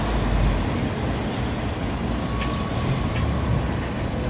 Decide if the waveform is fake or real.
real